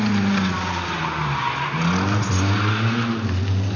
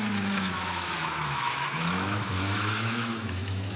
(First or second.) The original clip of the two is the first